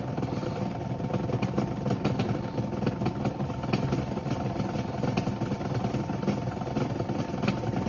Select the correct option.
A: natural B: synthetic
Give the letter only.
A